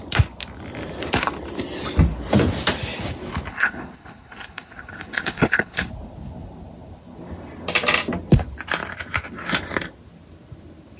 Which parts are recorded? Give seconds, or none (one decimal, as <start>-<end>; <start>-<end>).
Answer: 0.0-3.5; 5.9-11.0